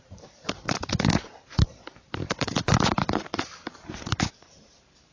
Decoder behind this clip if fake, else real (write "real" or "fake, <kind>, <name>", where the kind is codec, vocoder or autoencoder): fake, vocoder, BigVGAN v2